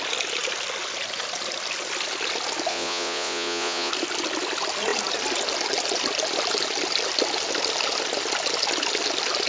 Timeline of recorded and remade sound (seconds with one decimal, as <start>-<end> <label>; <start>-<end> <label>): 0.0-2.7 recorded; 2.7-3.9 remade; 3.9-9.5 recorded